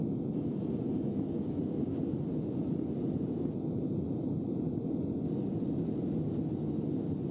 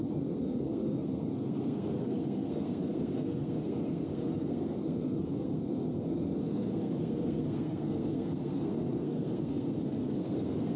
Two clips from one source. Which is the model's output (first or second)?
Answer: second